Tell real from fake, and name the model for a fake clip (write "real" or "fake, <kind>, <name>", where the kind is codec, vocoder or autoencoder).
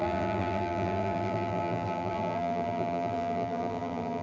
fake, vocoder, BigVGAN v2